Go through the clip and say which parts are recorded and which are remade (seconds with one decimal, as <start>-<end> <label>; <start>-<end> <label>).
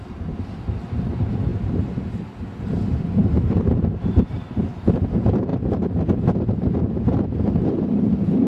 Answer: 0.0-8.5 recorded